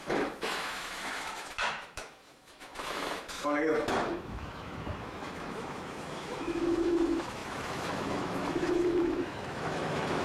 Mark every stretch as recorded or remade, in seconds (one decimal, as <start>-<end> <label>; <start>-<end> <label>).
0.0-10.2 remade